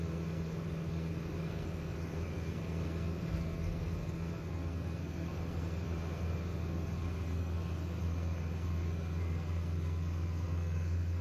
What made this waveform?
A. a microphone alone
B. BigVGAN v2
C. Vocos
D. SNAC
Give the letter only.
D